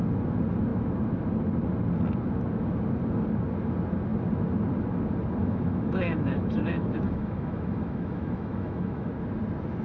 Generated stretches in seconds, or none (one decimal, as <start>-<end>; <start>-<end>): 5.4-9.1

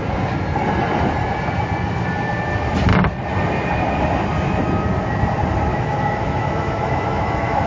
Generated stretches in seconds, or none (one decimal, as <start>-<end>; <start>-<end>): 5.7-7.7

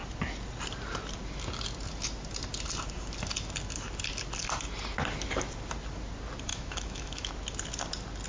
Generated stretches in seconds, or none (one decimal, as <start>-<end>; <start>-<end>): 6.5-7.3

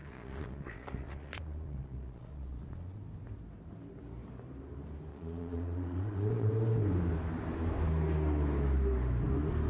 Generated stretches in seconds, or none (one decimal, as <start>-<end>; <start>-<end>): 0.0-3.0; 5.1-6.5

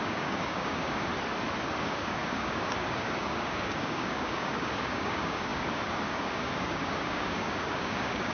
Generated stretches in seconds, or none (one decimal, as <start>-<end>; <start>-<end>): 0.0-1.1; 1.8-8.3

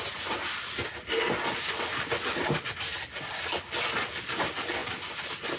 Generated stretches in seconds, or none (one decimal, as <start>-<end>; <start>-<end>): none

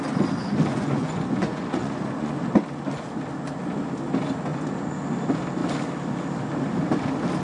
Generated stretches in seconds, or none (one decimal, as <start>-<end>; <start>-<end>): 0.7-2.3; 4.5-5.0